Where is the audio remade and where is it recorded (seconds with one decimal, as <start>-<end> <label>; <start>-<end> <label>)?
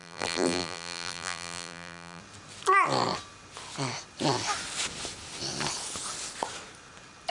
0.0-2.2 remade; 2.2-7.3 recorded